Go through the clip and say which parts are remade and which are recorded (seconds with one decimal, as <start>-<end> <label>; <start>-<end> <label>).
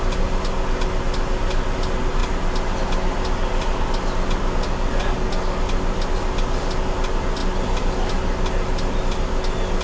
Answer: 0.0-9.8 recorded